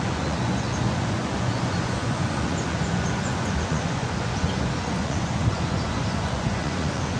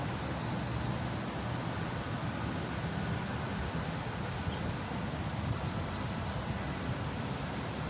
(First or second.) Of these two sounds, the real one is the second